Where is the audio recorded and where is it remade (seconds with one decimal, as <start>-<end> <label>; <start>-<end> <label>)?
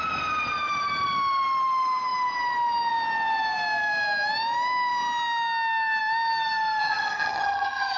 0.0-6.8 recorded; 6.8-8.0 remade